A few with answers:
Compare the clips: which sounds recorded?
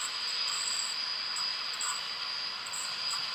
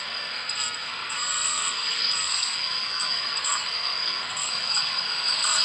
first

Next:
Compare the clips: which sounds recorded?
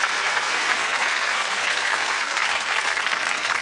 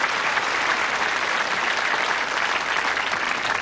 second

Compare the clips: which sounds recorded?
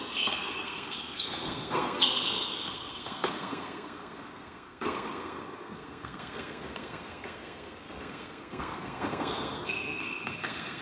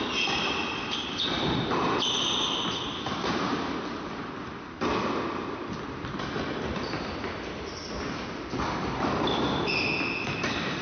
second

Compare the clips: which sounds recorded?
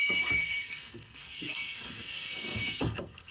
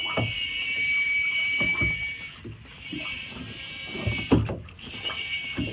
second